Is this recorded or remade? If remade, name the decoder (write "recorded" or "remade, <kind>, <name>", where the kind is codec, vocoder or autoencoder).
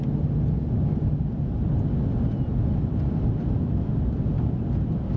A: recorded